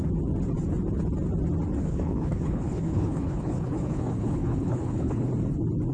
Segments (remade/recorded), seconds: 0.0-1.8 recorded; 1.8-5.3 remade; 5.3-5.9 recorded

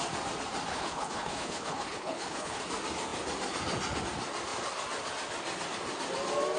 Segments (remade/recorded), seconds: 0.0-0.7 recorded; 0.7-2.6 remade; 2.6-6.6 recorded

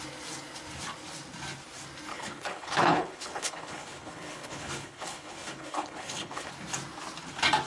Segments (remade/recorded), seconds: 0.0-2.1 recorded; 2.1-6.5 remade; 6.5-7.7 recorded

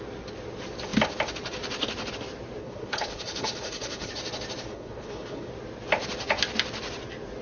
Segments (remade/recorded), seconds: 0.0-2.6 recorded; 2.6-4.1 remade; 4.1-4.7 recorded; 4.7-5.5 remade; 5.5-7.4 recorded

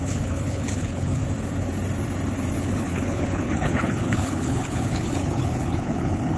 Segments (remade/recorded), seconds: 0.0-1.2 remade; 1.2-2.6 recorded; 2.6-6.4 remade

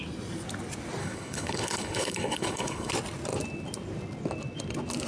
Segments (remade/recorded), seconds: 0.0-1.0 recorded; 1.0-2.9 remade; 2.9-5.1 recorded

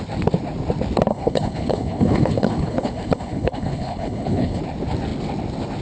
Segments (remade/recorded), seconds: 0.0-1.1 recorded; 1.1-4.6 remade; 4.6-5.8 recorded

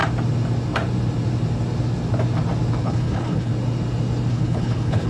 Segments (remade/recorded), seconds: 0.0-2.8 recorded; 2.8-3.5 remade; 3.5-4.3 recorded; 4.3-5.1 remade